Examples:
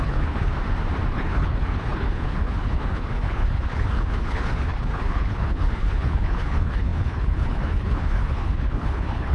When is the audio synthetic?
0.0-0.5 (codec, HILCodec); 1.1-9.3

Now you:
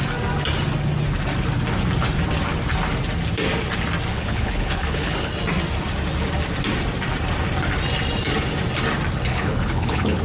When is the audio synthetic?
4.1-5.3 (codec, HILCodec); 9.3-10.2

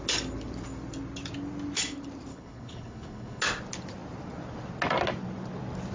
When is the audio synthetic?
2.3-3.4 (codec, HILCodec)

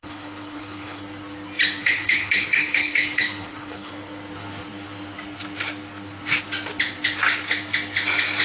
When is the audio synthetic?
0.0-1.0 (codec, HILCodec); 1.8-3.9

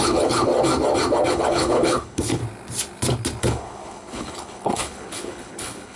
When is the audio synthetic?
0.0-0.5 (codec, HILCodec); 1.3-2.4; 3.4-6.0

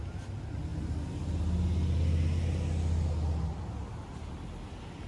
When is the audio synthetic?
none